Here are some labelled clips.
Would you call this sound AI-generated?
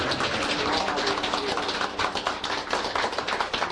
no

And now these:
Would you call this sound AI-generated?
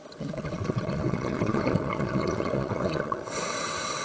yes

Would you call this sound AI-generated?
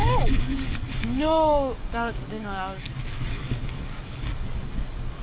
yes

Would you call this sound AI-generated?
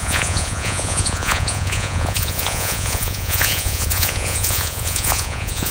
yes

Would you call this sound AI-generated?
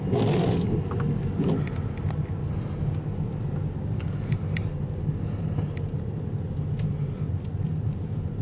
no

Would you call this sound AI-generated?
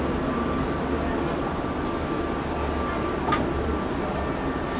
no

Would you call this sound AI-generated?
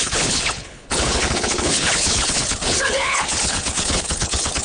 yes